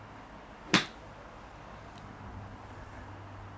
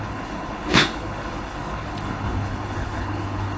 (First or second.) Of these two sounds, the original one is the first